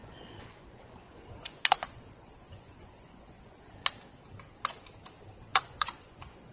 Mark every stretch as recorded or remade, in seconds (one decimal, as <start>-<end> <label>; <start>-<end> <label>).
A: 0.0-3.9 remade; 3.9-5.4 recorded; 5.4-6.5 remade